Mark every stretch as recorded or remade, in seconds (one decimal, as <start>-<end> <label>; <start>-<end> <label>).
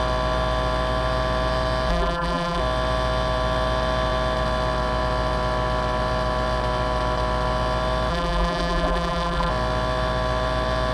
0.0-1.9 recorded; 1.9-2.6 remade; 2.6-8.1 recorded; 8.1-9.5 remade; 9.5-10.9 recorded